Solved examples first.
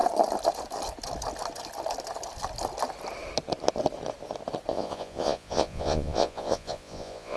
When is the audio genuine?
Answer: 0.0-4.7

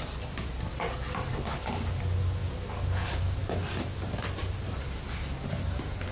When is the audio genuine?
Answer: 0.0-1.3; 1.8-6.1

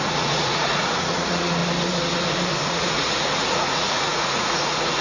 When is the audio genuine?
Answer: 1.6-2.7

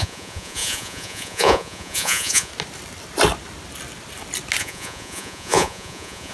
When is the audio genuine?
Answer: 2.5-4.6